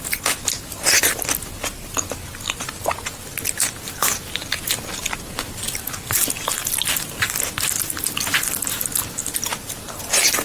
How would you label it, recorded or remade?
recorded